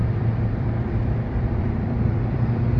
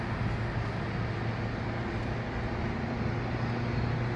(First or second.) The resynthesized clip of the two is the first